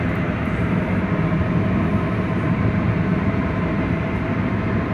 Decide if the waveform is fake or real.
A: fake